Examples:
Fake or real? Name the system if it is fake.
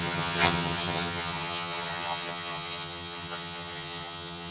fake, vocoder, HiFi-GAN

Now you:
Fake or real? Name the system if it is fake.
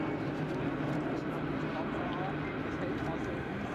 real